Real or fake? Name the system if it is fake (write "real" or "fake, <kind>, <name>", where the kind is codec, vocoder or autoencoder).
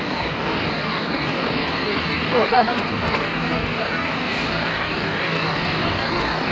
fake, codec, DAC